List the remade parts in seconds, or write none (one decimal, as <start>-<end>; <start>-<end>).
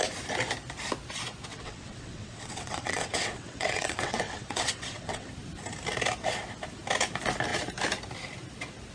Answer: 1.5-5.3